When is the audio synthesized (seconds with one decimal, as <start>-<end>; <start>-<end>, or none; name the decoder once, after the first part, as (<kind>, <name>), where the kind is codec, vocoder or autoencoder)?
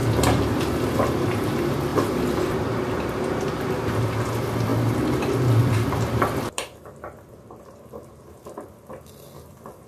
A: 0.0-1.0 (vocoder, BigVGAN v2); 1.9-2.5; 4.7-7.6